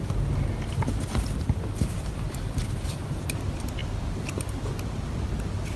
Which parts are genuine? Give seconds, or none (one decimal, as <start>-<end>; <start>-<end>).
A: 0.0-5.8